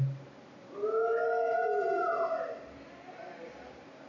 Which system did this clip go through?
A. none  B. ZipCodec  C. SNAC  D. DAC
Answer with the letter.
A